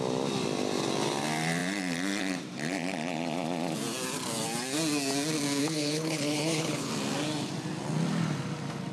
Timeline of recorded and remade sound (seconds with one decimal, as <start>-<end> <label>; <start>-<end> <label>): 0.0-5.6 recorded; 5.6-6.9 remade; 6.9-8.9 recorded